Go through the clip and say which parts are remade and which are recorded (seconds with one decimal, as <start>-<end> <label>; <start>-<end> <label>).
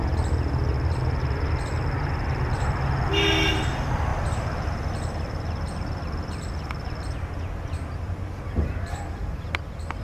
0.0-10.0 recorded